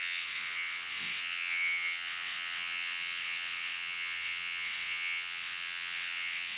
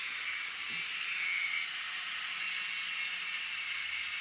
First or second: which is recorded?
second